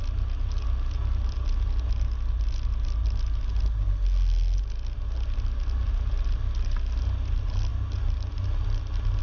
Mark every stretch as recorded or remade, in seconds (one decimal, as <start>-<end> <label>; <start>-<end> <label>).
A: 0.0-9.2 recorded